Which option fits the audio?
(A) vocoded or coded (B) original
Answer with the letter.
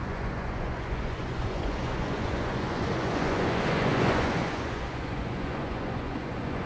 A